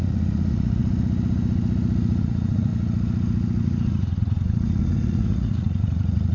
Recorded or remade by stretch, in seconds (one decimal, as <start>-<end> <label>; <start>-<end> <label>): 0.0-0.8 remade; 0.8-2.2 recorded; 2.2-2.7 remade; 2.7-3.6 recorded; 3.6-6.3 remade